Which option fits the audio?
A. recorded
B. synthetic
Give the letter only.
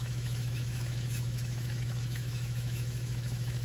B